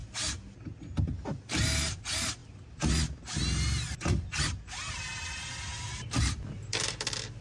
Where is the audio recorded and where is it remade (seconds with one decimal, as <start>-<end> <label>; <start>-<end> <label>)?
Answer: 0.0-7.4 recorded